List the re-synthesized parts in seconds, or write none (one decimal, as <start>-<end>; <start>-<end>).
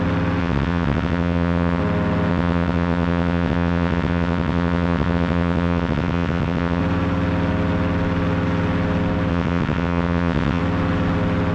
0.4-1.8; 2.3-6.8; 9.3-10.6